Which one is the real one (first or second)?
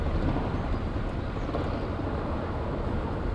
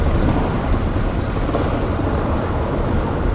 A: first